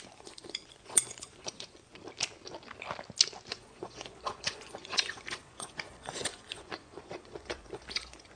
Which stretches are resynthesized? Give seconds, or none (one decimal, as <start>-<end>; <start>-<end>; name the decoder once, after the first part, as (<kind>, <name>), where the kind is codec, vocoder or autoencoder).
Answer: 0.0-1.9 (vocoder, Vocos); 3.5-8.4